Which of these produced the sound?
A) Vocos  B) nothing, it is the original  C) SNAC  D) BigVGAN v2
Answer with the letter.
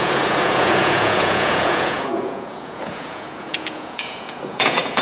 A